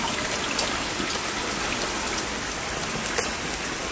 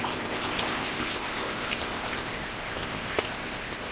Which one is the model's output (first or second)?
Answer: second